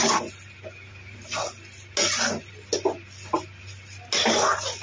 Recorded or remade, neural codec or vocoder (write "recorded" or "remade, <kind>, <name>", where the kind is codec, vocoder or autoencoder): recorded